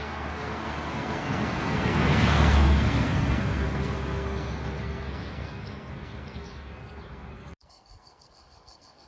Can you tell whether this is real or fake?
fake